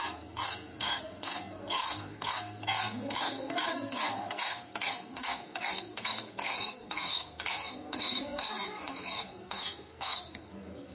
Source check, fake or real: fake